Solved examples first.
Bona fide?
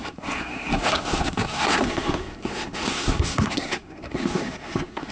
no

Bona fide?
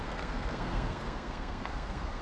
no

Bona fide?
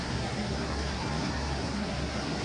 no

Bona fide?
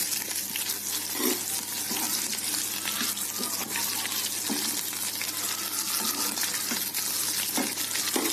yes